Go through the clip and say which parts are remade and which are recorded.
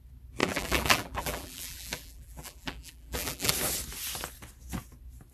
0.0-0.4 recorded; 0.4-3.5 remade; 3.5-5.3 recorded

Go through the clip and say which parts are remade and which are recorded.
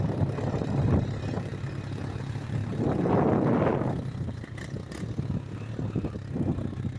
0.0-7.0 recorded